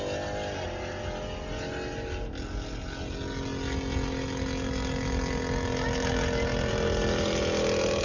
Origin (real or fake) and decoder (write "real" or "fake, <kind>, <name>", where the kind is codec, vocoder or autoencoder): real